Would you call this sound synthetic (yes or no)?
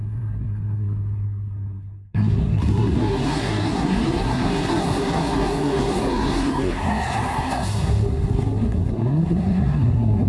yes